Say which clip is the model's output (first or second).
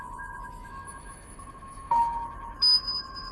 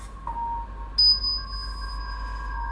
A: first